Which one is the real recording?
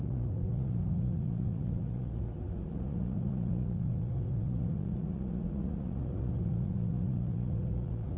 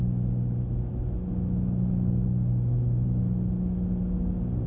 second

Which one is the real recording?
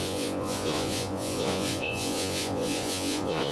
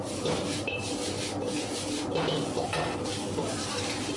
second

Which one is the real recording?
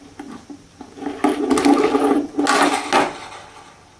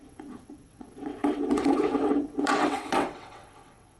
first